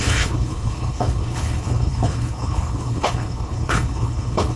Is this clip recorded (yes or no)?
no